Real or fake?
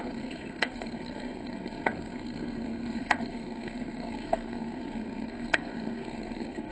fake